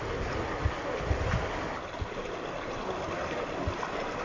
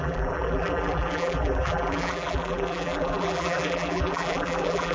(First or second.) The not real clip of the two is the second